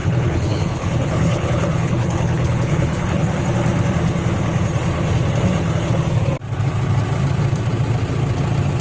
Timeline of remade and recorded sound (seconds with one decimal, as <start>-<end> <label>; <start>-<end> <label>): 0.0-3.4 remade; 3.4-8.8 recorded